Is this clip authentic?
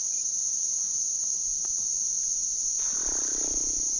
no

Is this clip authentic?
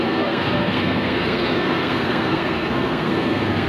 no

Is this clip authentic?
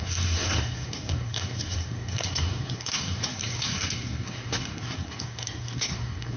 no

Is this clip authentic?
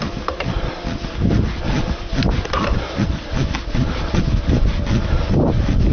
yes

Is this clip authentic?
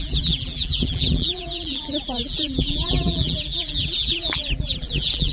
no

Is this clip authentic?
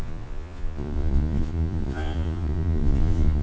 no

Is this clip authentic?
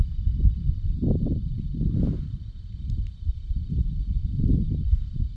yes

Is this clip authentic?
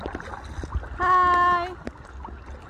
yes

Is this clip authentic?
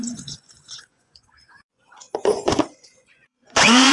no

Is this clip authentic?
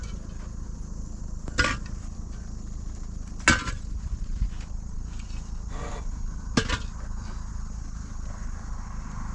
yes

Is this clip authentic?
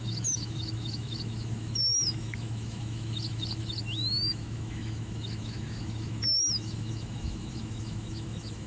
no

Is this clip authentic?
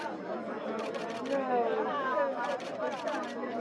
yes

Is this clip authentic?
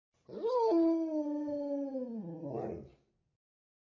yes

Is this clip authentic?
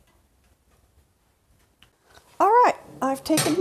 yes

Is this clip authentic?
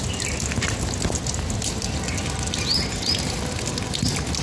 yes